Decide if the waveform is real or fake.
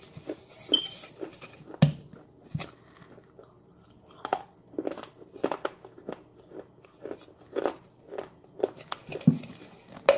real